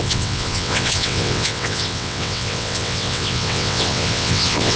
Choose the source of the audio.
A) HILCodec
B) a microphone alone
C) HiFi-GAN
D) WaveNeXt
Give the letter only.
D